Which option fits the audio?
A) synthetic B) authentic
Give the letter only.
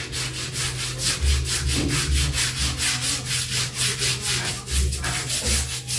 B